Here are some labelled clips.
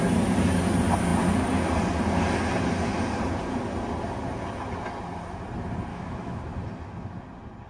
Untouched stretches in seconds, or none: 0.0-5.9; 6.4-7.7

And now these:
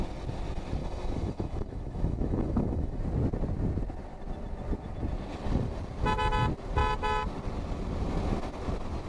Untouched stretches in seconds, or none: 0.0-0.8; 3.0-9.1

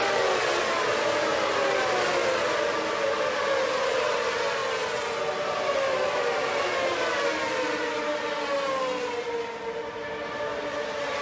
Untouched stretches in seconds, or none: 0.0-11.2

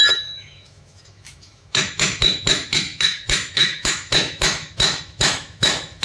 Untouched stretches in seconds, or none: none

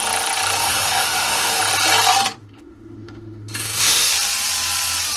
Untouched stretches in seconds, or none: 0.0-0.6; 1.6-2.4; 4.1-5.2